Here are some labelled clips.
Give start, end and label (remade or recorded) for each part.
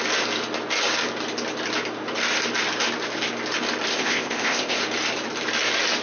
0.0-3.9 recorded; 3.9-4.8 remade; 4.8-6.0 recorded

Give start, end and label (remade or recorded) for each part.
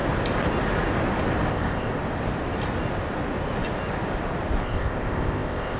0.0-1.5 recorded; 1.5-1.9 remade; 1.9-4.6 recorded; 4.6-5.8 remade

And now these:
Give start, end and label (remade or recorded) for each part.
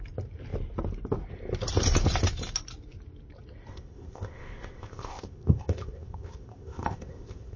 0.0-3.7 recorded; 3.7-7.6 remade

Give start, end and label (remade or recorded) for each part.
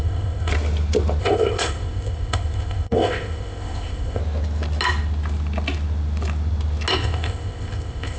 0.0-0.5 remade; 0.5-1.2 recorded; 1.2-4.2 remade; 4.2-6.9 recorded; 6.9-8.2 remade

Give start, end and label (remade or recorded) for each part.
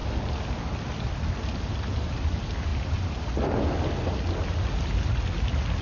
0.0-5.8 recorded